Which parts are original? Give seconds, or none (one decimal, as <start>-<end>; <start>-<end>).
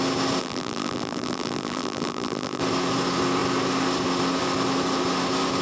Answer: 0.0-0.4; 2.6-5.6